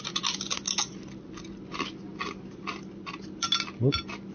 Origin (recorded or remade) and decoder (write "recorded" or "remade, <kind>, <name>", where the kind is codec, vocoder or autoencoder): recorded